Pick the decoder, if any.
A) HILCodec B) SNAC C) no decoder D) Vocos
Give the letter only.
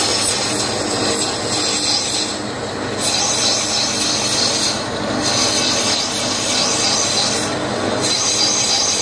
C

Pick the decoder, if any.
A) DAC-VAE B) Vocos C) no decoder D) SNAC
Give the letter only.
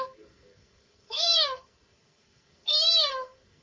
D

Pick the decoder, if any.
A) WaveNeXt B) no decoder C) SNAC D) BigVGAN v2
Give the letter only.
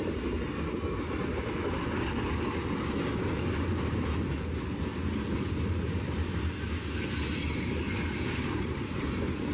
B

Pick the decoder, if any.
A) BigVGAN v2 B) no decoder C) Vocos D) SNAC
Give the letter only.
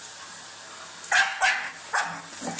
B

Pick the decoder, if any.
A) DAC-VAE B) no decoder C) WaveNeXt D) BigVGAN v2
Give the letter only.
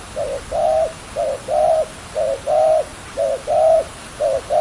B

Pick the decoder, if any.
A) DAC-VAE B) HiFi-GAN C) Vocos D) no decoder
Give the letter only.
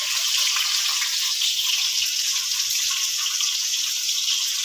D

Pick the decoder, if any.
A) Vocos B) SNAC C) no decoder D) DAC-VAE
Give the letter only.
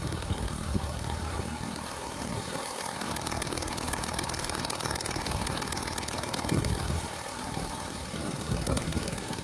B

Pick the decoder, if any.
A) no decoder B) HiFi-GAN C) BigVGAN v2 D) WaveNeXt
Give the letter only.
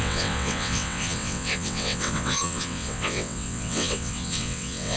D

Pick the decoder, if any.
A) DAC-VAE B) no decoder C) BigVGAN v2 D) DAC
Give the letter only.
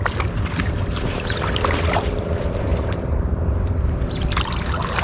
C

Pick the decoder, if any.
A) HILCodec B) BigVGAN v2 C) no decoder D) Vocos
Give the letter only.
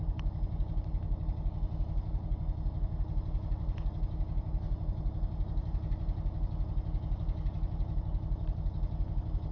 C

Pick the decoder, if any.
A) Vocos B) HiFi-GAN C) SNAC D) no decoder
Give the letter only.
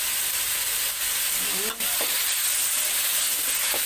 D